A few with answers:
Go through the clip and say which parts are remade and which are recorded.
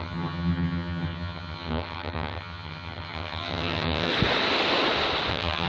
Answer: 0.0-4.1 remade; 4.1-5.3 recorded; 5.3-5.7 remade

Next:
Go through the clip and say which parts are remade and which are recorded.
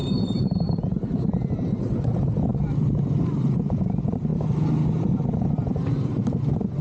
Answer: 0.0-6.8 remade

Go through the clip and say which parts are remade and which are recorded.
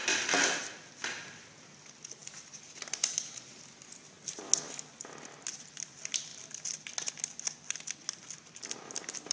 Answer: 0.0-9.3 recorded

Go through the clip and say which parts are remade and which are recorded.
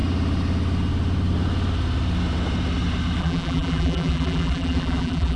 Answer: 0.0-3.2 recorded; 3.2-5.4 remade